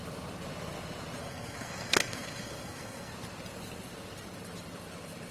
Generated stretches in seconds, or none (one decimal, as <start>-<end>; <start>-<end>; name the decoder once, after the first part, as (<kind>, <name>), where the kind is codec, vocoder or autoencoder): 1.2-3.1 (codec, SNAC)